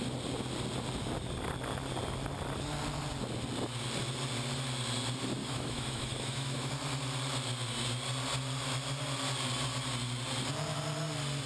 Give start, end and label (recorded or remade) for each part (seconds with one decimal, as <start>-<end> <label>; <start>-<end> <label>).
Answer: 0.0-5.4 recorded; 5.4-6.7 remade; 6.7-11.5 recorded